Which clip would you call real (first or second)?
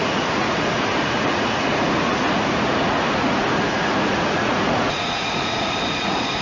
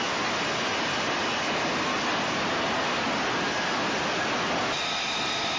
second